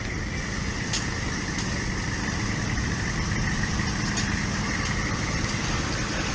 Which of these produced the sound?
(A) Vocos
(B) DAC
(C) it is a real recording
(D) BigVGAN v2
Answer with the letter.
C